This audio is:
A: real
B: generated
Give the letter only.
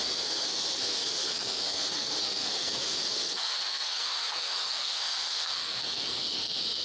B